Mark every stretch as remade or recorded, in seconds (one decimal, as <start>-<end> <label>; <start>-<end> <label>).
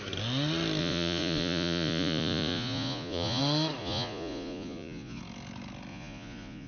0.0-0.8 recorded; 0.8-3.4 remade; 3.4-3.8 recorded; 3.8-5.2 remade; 5.2-5.9 recorded; 5.9-6.7 remade